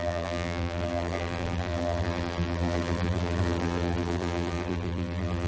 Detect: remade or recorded remade